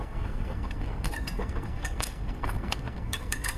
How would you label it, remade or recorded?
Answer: remade